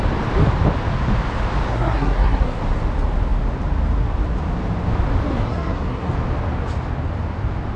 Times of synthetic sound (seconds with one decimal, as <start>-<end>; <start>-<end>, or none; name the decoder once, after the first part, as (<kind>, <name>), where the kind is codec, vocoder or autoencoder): 1.7-2.6 (codec, SNAC); 5.3-6.1